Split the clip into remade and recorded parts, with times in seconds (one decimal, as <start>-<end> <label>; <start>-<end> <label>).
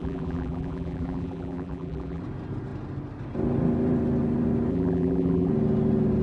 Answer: 0.0-2.2 remade; 2.2-4.7 recorded; 4.7-5.5 remade; 5.5-6.2 recorded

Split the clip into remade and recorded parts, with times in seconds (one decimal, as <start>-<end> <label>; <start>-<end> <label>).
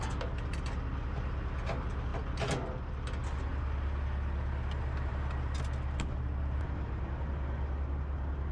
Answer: 0.0-8.5 recorded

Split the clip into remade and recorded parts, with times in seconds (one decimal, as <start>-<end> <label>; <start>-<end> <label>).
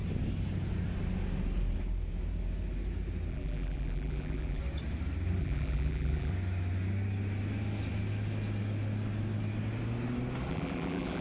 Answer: 0.0-3.3 recorded; 3.3-4.6 remade; 4.6-5.4 recorded; 5.4-6.3 remade; 6.3-10.5 recorded; 10.5-11.2 remade